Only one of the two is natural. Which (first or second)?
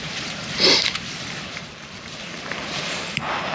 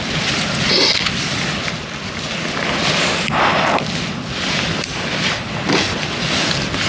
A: second